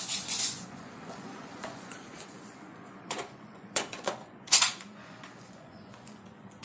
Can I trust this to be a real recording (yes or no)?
no